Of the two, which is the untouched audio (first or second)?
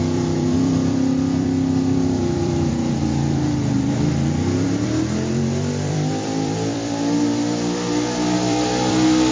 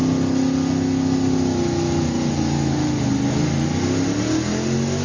second